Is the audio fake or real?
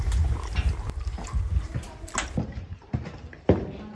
real